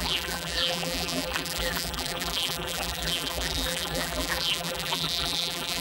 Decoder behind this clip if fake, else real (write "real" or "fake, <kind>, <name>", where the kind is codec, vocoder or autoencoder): fake, vocoder, BigVGAN v2